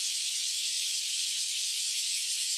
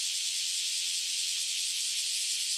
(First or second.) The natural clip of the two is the second